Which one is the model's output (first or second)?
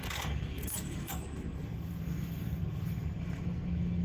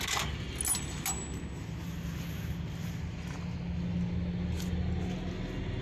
first